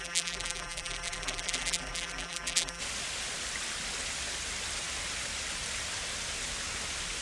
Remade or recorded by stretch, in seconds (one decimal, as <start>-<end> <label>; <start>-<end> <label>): 0.0-2.8 remade; 2.8-7.2 recorded